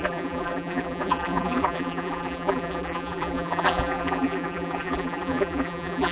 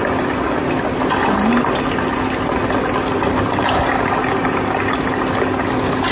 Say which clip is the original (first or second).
second